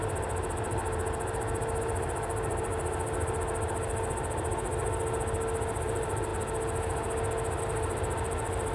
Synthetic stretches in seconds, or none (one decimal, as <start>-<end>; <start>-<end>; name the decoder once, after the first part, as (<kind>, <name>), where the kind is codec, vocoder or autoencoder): 0.0-0.8 (vocoder, BigVGAN v2); 1.8-2.7; 5.8-6.3; 7.6-8.7